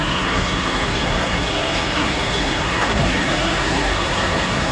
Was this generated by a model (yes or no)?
yes